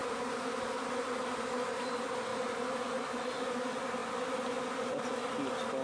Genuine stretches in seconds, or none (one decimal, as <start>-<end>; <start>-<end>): 0.8-2.3; 3.2-5.8